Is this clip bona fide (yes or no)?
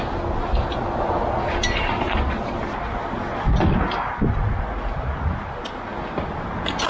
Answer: yes